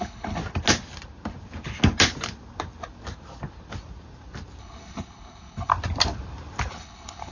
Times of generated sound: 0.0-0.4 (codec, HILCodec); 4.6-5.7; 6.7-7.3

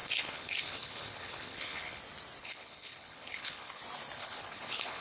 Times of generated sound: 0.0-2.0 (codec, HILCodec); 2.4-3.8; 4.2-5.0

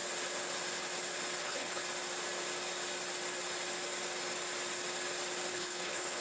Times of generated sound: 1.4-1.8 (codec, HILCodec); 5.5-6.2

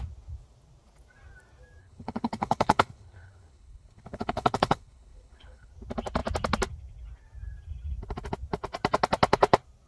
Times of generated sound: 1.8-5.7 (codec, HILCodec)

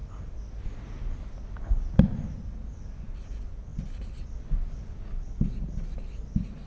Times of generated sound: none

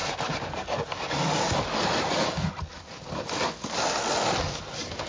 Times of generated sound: none